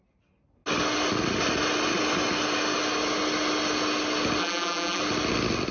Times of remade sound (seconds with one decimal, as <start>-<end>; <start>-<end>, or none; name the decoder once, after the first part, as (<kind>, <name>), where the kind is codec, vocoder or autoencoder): 4.4-5.0 (vocoder, BigVGAN v2)